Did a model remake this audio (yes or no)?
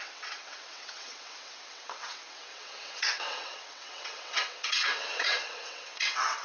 yes